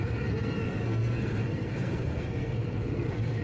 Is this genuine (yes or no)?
no